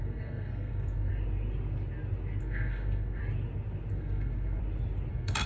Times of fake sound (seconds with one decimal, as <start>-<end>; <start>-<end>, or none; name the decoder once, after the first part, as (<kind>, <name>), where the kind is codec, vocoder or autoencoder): 0.0-1.1 (codec, SNAC); 2.4-3.2; 3.9-4.6; 5.1-5.5